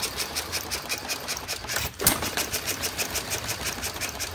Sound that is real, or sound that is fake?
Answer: fake